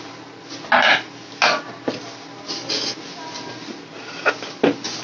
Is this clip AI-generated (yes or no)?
no